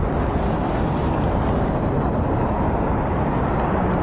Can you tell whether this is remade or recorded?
recorded